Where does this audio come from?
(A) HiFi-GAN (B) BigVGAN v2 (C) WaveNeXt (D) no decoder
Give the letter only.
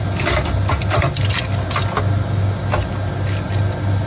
D